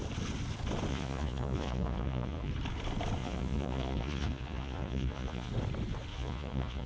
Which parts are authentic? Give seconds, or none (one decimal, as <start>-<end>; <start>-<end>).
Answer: 0.0-0.9; 2.5-3.2; 5.5-6.1